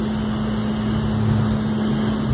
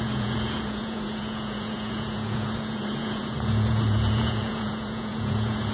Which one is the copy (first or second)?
second